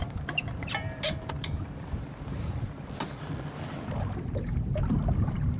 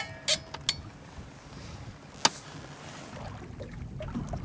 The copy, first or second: first